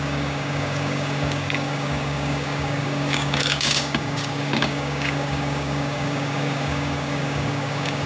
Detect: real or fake fake